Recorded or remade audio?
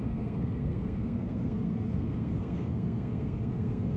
remade